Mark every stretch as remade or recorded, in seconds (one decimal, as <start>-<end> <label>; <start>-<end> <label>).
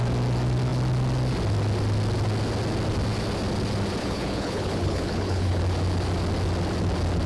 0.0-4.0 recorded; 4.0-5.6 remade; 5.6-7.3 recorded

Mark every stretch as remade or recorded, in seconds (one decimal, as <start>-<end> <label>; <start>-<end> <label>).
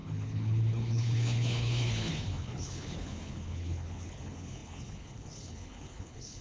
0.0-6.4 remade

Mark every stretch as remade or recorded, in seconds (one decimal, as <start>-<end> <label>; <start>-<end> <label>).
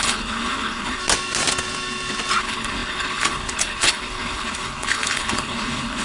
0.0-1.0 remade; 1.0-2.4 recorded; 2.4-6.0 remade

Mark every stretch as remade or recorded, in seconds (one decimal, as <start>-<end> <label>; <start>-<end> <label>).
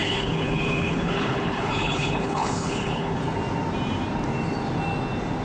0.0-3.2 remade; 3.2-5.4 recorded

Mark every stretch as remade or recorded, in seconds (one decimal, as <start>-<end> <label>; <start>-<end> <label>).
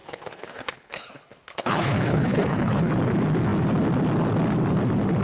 0.0-2.9 remade; 2.9-5.2 recorded